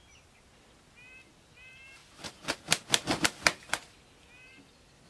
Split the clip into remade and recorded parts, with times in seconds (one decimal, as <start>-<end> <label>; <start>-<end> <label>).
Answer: 0.0-5.1 recorded